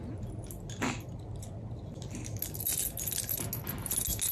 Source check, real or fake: real